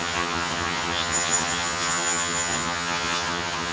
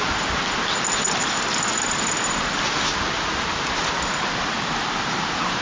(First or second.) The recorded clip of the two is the second